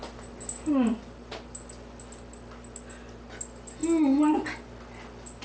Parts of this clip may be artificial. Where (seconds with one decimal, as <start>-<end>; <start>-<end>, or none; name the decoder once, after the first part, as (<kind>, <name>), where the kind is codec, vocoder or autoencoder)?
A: none